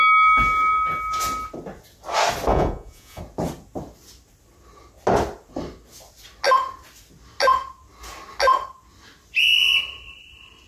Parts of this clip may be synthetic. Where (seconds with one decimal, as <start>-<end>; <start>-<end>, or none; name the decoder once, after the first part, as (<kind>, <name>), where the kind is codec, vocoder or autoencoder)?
2.5-3.2 (vocoder, Vocos)